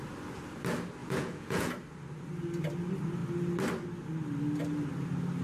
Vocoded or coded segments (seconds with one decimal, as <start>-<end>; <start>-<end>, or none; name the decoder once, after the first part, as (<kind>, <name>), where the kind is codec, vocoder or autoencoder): 1.0-1.7 (vocoder, Vocos)